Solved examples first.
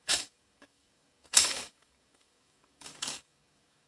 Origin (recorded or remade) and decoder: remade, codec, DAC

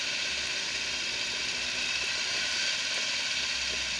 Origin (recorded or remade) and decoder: recorded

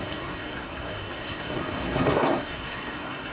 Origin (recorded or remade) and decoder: remade, codec, SNAC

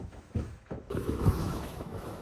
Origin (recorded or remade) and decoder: remade, autoencoder, DAC-VAE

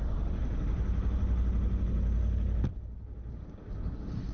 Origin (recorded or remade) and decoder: recorded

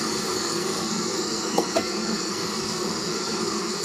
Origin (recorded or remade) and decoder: remade, codec, SNAC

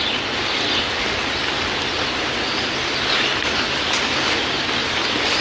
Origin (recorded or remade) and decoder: recorded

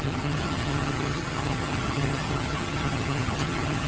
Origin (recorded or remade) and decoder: remade, vocoder, HiFi-GAN